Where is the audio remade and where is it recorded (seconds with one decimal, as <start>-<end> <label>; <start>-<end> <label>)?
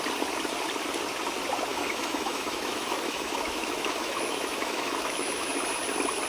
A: 0.0-1.7 recorded; 1.7-5.5 remade; 5.5-6.3 recorded